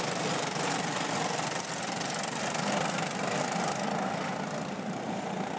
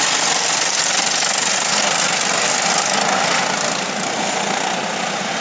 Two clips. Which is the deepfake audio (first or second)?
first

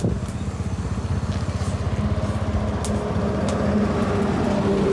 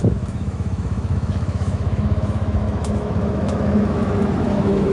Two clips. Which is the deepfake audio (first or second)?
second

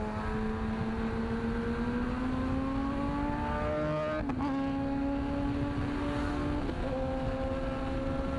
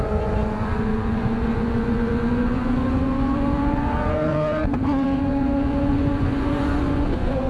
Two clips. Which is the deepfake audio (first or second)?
second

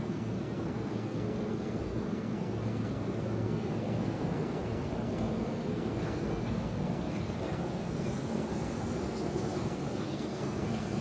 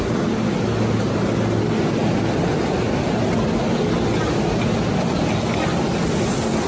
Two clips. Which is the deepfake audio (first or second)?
first